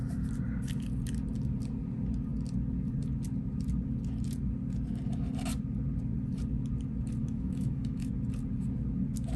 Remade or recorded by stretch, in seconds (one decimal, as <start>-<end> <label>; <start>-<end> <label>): 0.0-7.2 recorded; 7.2-8.1 remade; 8.1-9.4 recorded